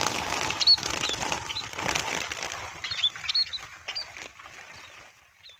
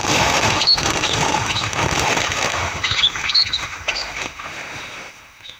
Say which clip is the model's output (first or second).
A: second